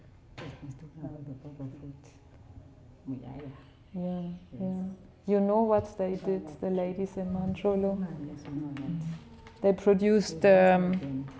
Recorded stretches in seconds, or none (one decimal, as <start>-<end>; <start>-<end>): 3.4-5.2; 5.8-11.4